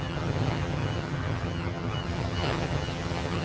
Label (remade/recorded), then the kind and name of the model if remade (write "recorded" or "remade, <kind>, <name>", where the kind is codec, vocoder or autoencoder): remade, vocoder, HiFi-GAN